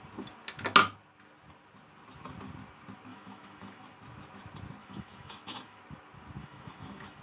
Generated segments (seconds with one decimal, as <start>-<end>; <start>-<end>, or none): 3.1-3.8; 4.8-5.8; 6.4-7.2